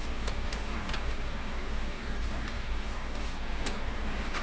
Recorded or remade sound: remade